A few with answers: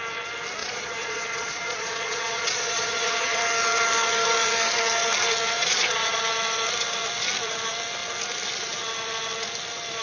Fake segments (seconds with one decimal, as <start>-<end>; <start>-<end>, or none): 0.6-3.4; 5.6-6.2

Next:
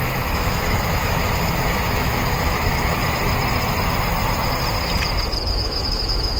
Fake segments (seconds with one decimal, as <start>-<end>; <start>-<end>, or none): 0.0-3.0; 5.5-6.4

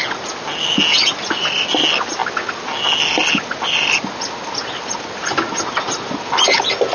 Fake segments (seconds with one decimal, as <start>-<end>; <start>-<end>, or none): none